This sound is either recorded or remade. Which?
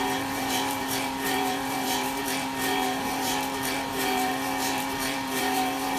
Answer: remade